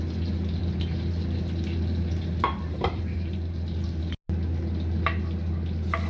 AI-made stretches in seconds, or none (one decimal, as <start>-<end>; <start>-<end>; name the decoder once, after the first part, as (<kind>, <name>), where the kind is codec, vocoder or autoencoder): 0.6-4.0 (vocoder, BigVGAN v2)